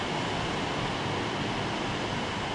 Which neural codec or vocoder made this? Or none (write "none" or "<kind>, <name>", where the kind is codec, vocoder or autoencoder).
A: none